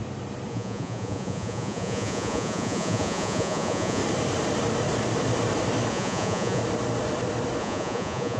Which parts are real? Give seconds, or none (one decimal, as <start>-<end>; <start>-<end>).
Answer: 0.0-0.5; 4.0-5.9; 6.6-7.6